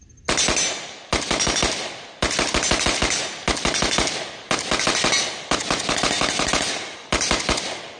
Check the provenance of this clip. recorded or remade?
recorded